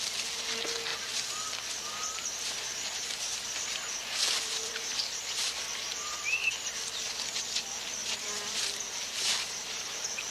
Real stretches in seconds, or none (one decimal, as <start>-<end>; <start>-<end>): 0.0-2.1; 5.5-8.0